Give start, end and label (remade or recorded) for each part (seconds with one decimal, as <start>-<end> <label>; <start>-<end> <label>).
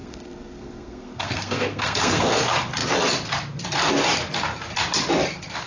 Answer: 0.0-2.4 remade; 2.4-5.7 recorded